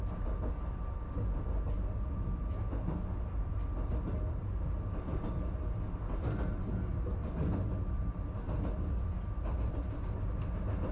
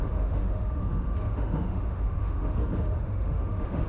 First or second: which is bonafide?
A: first